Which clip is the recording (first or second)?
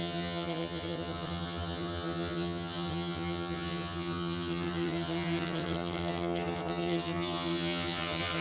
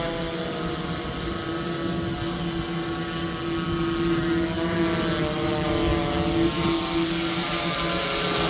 second